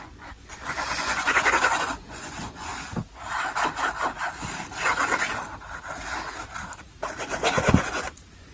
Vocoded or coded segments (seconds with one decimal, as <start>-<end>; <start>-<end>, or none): 0.0-2.7; 7.2-8.5